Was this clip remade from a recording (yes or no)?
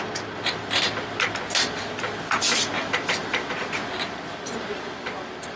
no